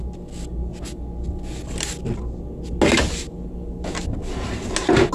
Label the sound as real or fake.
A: real